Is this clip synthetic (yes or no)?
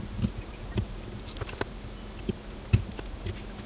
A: no